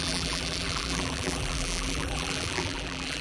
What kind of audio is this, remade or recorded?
remade